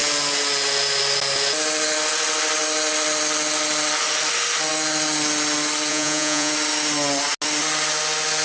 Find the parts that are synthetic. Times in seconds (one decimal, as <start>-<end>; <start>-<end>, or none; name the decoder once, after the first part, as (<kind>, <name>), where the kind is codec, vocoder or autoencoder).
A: 5.9-6.5 (vocoder, Vocos)